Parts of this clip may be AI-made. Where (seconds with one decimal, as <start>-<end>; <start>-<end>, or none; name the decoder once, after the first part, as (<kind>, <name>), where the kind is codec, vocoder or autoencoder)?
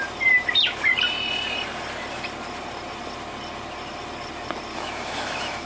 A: 4.7-5.7 (autoencoder, DAC-VAE)